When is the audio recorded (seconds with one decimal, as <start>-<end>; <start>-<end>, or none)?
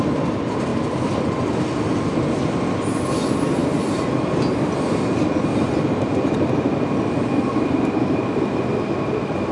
0.7-3.0; 3.6-8.7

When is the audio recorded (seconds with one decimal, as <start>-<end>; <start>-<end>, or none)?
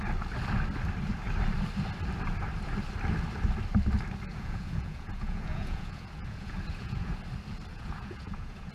0.0-4.3; 7.2-7.7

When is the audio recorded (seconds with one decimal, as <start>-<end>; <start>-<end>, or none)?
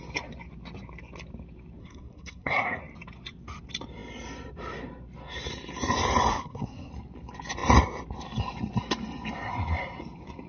0.0-1.8; 2.8-6.3; 6.9-10.5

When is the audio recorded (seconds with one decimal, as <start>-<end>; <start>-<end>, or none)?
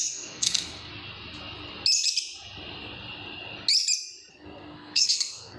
0.9-4.3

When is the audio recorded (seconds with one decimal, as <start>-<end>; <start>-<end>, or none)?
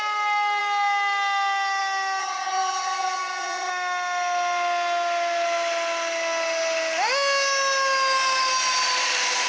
0.0-2.2; 3.7-9.5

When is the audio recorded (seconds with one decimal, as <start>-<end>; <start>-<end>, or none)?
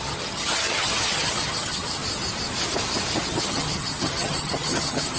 2.0-3.3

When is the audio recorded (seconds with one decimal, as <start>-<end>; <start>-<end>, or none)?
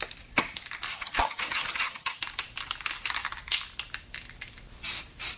0.0-0.9; 2.2-5.4